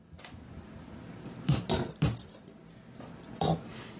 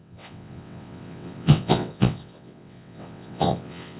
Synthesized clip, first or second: second